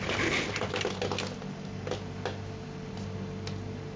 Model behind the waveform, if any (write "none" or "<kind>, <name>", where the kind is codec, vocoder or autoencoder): none